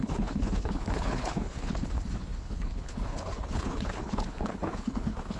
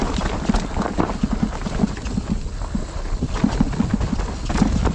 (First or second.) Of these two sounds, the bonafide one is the second